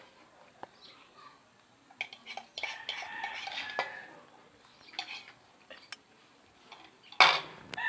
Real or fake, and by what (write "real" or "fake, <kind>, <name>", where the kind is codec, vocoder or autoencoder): real